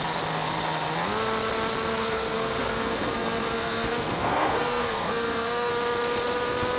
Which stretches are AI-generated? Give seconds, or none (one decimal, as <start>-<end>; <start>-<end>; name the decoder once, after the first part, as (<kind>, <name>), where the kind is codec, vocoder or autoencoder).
1.9-5.7 (codec, SNAC)